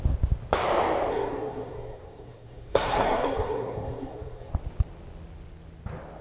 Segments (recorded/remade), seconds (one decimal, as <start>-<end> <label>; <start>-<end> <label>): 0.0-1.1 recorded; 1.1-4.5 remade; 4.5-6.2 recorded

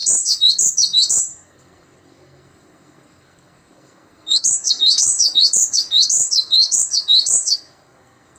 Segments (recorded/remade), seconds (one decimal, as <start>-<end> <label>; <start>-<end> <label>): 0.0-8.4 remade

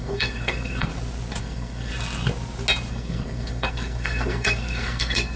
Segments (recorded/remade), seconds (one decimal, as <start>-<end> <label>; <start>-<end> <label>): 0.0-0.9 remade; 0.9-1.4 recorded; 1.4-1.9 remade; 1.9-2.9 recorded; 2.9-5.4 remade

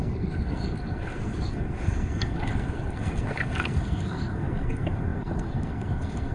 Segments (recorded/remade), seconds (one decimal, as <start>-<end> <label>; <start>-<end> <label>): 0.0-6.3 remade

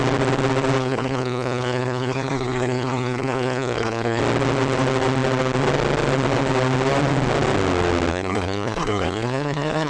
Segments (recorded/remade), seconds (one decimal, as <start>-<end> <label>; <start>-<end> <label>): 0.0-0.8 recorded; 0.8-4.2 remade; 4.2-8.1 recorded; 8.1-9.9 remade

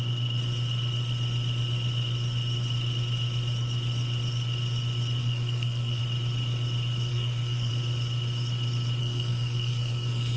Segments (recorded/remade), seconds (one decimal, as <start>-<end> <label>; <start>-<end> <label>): 0.0-5.2 recorded; 5.2-6.0 remade; 6.0-7.1 recorded; 7.1-7.7 remade; 7.7-9.0 recorded; 9.0-10.4 remade

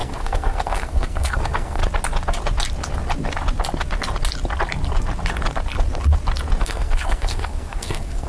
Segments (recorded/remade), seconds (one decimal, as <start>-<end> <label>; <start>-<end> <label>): 0.0-1.8 remade; 1.8-6.6 recorded; 6.6-8.3 remade

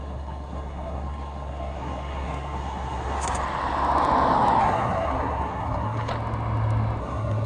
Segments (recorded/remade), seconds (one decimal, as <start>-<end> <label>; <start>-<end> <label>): 0.0-3.4 remade; 3.4-4.6 recorded; 4.6-6.1 remade; 6.1-7.0 recorded; 7.0-7.5 remade